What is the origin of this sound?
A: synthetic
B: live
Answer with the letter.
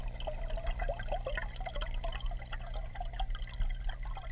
B